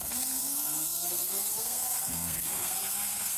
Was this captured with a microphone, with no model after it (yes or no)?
no